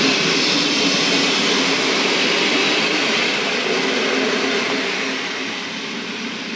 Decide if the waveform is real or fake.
real